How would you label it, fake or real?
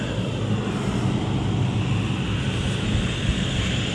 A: real